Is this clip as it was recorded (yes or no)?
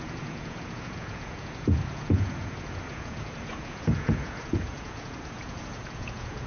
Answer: no